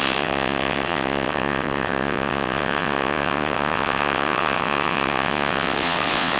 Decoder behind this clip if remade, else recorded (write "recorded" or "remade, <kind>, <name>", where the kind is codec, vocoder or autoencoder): remade, vocoder, WaveNeXt